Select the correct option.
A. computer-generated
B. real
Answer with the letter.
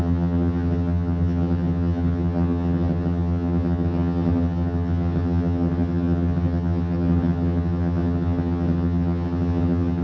A